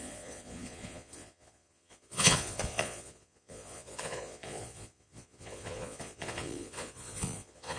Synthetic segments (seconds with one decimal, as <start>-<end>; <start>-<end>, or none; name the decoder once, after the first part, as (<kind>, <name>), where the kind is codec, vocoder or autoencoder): 0.0-7.8 (vocoder, Vocos)